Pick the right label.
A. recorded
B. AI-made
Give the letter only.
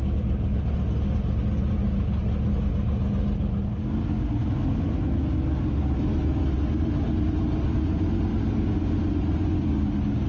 A